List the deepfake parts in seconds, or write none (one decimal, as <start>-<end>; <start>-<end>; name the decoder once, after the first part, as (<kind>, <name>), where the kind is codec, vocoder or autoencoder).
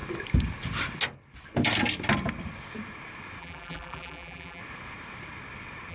3.4-4.6 (vocoder, BigVGAN v2)